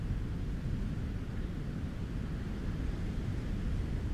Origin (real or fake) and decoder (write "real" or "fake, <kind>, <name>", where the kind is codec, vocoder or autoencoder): real